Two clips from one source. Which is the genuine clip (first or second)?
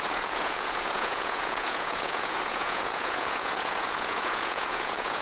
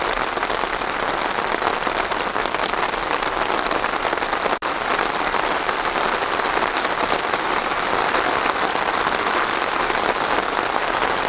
second